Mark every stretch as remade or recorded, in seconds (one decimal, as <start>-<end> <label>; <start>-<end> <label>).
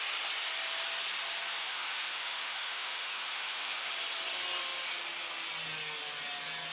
0.0-1.6 recorded; 1.6-3.9 remade; 3.9-6.7 recorded